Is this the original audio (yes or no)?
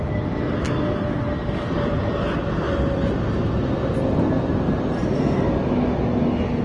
yes